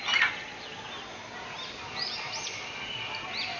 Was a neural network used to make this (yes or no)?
no